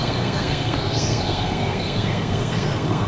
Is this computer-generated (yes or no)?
yes